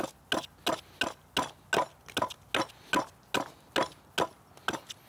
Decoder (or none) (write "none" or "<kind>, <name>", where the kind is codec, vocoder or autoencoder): none